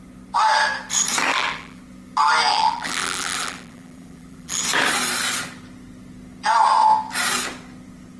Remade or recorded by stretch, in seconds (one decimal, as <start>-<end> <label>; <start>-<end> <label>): 0.0-1.3 recorded; 1.3-1.8 remade; 1.8-2.5 recorded; 2.5-4.6 remade; 4.6-8.2 recorded